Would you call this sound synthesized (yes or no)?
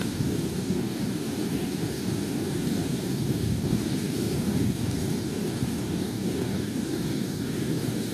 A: yes